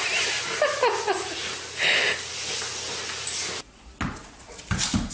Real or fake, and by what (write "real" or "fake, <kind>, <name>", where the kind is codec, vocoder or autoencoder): real